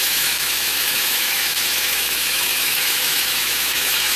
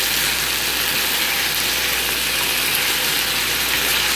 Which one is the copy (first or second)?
first